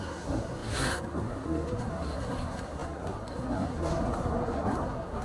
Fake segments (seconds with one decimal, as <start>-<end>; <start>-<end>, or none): 0.0-5.2